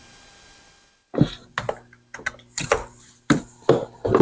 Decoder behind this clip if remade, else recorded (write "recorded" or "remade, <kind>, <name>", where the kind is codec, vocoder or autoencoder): recorded